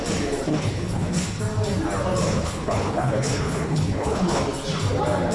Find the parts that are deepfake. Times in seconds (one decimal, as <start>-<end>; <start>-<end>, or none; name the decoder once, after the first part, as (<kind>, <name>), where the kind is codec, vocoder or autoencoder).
0.5-1.4 (codec, HILCodec); 2.3-4.4